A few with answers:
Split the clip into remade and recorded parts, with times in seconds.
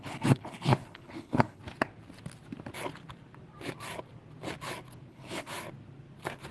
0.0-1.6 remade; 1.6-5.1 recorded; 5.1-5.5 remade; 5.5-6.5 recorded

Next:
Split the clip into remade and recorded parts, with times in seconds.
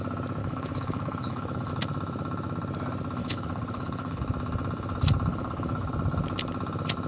0.0-0.4 recorded; 0.4-1.7 remade; 1.7-3.2 recorded; 3.2-4.2 remade; 4.2-5.3 recorded; 5.3-5.9 remade; 5.9-7.1 recorded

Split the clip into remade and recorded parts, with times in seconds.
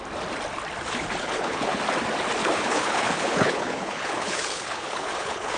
0.0-1.2 recorded; 1.2-1.8 remade; 1.8-2.4 recorded; 2.4-5.6 remade